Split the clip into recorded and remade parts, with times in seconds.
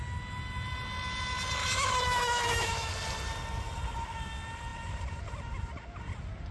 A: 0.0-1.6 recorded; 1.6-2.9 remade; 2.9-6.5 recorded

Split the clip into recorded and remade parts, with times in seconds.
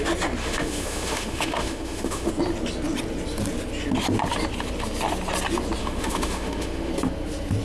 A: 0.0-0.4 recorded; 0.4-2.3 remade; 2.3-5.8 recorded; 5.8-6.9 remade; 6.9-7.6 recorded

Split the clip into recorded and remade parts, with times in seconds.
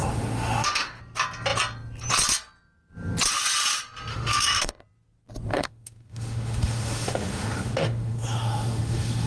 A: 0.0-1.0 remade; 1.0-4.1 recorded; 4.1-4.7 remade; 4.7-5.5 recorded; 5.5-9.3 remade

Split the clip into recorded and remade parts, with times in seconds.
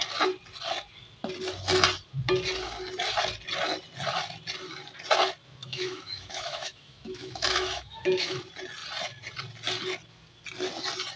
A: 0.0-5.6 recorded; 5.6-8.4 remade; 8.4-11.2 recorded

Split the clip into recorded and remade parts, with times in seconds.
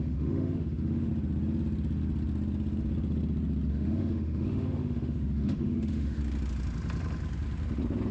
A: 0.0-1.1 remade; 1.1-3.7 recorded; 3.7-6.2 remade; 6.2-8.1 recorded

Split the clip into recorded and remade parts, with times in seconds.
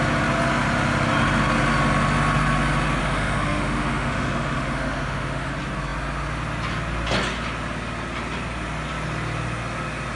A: 0.0-3.0 recorded; 3.0-5.5 remade; 5.5-10.2 recorded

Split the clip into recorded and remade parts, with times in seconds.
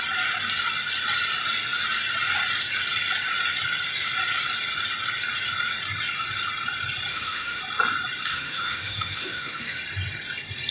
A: 0.0-7.1 recorded; 7.1-7.6 remade; 7.6-8.3 recorded; 8.3-9.8 remade; 9.8-10.7 recorded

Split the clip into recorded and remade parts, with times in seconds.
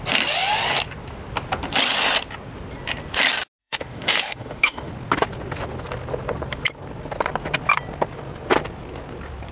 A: 0.0-3.6 recorded; 3.6-4.9 remade; 4.9-9.5 recorded